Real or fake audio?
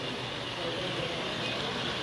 real